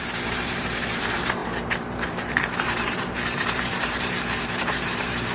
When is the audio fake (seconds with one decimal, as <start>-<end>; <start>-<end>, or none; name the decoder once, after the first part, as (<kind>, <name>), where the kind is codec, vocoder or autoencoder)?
0.0-5.3 (vocoder, BigVGAN v2)